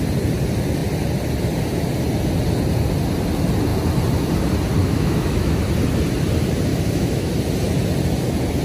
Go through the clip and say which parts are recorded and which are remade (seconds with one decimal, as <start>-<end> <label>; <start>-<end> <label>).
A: 0.0-4.8 recorded; 4.8-5.6 remade; 5.6-6.7 recorded; 6.7-7.3 remade; 7.3-8.6 recorded